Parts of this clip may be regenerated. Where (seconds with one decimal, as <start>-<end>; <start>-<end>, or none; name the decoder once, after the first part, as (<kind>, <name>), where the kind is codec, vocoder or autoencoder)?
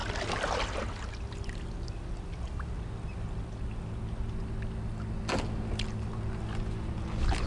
none